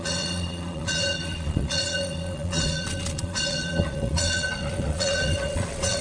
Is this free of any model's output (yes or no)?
no